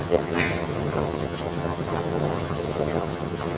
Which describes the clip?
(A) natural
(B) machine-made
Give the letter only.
B